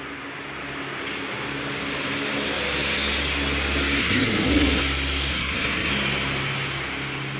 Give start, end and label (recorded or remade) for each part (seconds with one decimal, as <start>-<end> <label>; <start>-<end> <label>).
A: 0.0-4.0 recorded; 4.0-4.8 remade; 4.8-5.3 recorded; 5.3-5.9 remade; 5.9-7.4 recorded